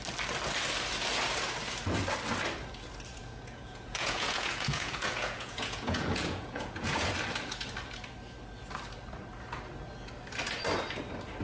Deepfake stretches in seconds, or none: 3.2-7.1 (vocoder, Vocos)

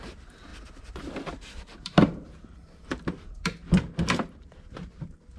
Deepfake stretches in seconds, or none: 0.0-0.5 (vocoder, BigVGAN v2); 1.0-5.4

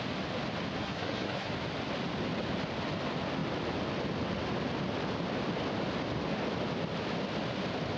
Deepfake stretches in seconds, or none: 0.8-1.5 (codec, SNAC)

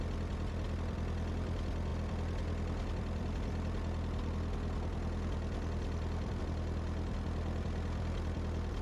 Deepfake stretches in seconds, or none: none

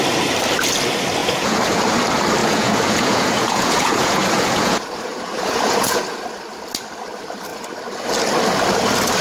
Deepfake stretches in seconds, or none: 1.2-1.8 (vocoder, Vocos); 2.4-6.0

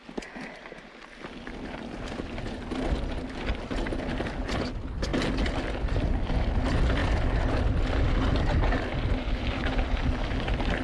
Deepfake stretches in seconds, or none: none

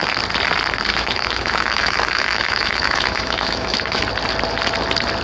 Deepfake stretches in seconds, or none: 0.9-4.0 (autoencoder, DAC-VAE)

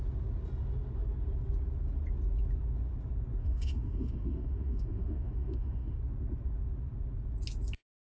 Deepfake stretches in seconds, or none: 3.4-6.0 (autoencoder, DAC-VAE)